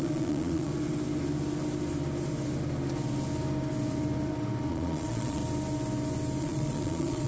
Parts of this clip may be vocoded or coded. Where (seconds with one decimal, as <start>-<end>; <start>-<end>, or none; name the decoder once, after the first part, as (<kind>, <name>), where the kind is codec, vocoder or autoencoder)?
0.0-0.7 (vocoder, Vocos); 4.7-5.4; 6.4-7.3